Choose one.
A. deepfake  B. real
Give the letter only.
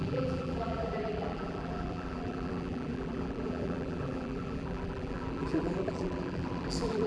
A